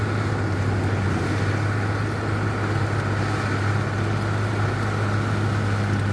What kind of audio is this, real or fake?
real